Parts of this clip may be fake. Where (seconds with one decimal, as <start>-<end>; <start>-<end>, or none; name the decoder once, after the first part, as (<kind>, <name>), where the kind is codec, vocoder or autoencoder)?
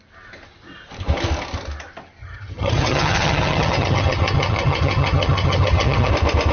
2.2-6.1 (vocoder, HiFi-GAN)